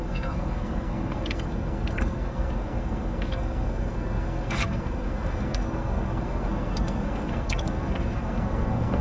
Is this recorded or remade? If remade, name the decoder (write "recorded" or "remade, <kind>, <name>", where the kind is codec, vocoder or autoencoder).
remade, codec, SNAC